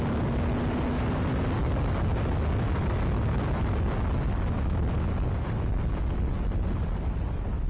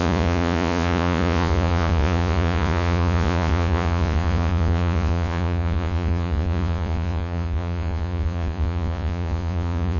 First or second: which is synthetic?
second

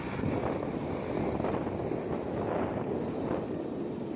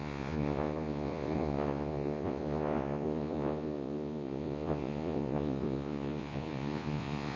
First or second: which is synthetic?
second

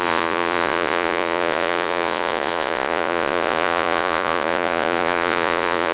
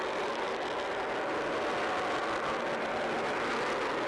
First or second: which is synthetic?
first